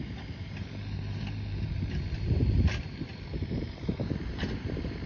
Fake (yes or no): yes